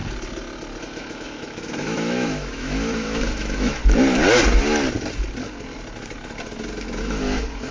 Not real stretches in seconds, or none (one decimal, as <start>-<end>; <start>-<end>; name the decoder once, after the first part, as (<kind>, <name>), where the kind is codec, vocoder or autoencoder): 0.8-3.8 (autoencoder, DAC-VAE); 7.0-7.7